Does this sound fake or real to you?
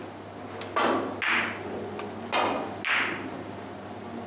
real